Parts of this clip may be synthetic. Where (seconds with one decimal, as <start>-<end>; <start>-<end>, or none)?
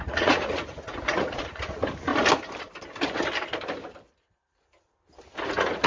0.0-2.1; 5.4-5.9